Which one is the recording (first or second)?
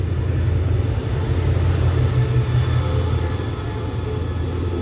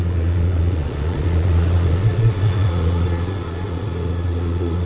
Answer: first